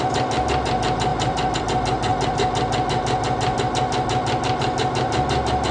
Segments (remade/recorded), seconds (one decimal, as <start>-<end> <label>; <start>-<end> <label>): 0.0-5.7 recorded